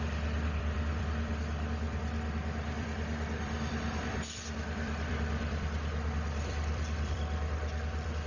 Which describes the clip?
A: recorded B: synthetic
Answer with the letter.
B